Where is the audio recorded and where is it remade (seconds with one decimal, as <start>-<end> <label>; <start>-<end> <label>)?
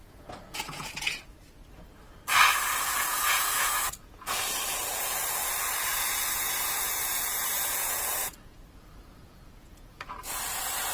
0.0-1.2 remade; 1.2-3.1 recorded; 3.1-5.5 remade; 5.5-5.9 recorded; 5.9-10.4 remade; 10.4-10.9 recorded